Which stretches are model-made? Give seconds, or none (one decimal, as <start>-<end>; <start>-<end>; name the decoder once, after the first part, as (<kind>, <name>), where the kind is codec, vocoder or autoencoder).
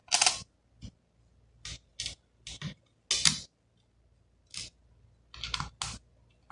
none